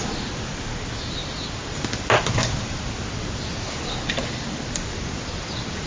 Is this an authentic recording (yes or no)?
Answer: yes